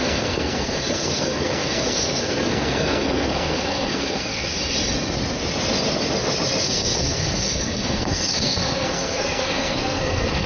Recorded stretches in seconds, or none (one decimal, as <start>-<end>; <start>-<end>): 4.5-6.6